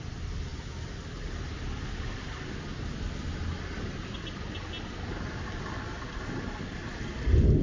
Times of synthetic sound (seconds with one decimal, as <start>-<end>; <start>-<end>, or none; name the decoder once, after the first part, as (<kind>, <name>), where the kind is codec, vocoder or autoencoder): none